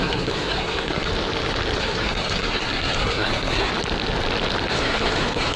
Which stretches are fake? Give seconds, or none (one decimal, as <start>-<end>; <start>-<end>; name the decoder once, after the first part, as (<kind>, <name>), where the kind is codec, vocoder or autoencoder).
0.0-1.1 (codec, SNAC); 1.8-3.7; 4.7-5.6